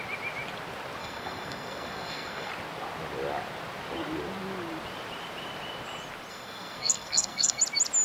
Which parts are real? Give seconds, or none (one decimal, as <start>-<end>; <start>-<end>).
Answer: 0.0-1.0; 2.5-6.3; 7.6-8.0